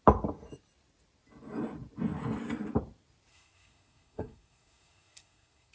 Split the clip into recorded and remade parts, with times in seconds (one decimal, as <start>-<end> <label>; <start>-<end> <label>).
0.0-3.3 recorded; 3.3-5.7 remade